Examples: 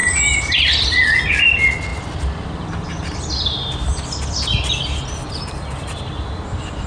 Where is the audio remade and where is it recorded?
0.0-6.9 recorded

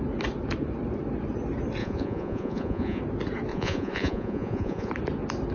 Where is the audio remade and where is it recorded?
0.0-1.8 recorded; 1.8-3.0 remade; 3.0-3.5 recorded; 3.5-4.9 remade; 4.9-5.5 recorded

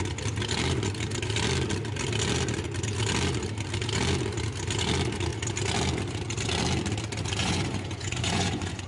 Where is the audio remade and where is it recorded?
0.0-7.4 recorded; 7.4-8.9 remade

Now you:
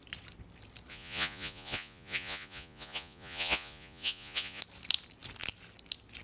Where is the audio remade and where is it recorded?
0.0-0.9 recorded; 0.9-4.6 remade; 4.6-6.2 recorded